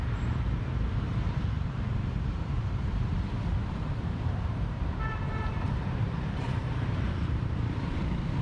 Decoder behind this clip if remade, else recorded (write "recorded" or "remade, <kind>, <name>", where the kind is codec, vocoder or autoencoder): remade, vocoder, BigVGAN v2